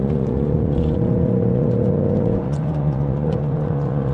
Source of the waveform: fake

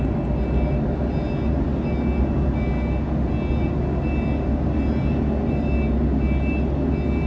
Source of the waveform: real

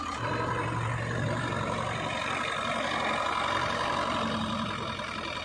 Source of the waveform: real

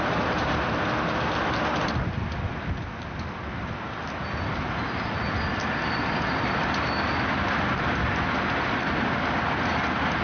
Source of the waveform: real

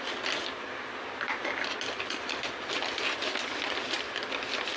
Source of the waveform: real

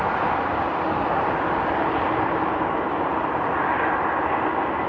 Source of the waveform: real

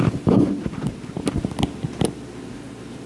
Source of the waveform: real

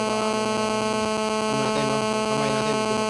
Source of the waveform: real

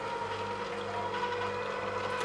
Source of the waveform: real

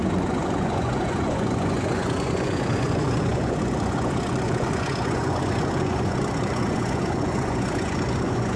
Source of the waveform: fake